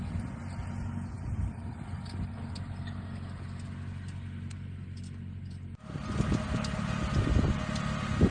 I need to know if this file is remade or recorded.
recorded